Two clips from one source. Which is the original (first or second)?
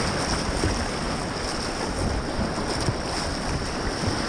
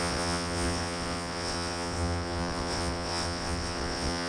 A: first